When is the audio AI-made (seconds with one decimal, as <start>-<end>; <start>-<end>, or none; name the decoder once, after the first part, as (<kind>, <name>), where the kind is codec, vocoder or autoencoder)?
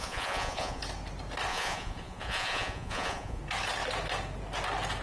0.0-0.8 (vocoder, Vocos); 1.5-3.4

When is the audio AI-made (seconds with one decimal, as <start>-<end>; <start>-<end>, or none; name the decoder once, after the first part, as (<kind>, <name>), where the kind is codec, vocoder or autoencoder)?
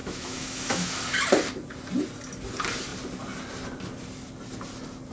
0.0-1.0 (autoencoder, DAC-VAE)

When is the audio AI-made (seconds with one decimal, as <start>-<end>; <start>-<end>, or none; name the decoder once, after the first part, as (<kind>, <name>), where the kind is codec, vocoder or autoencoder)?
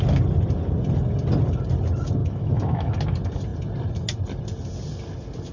2.2-3.0 (autoencoder, DAC-VAE)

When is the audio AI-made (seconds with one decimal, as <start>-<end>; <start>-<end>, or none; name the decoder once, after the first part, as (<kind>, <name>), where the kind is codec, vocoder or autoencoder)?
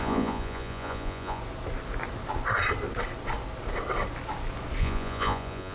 0.0-1.4 (vocoder, Vocos); 4.8-5.7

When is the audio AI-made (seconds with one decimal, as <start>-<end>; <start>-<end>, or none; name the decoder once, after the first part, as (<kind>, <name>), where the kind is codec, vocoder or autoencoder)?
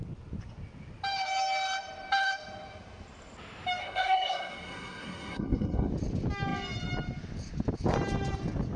3.8-5.9 (codec, SNAC)